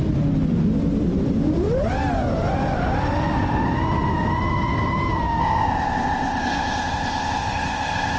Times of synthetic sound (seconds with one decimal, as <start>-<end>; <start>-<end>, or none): 5.4-8.2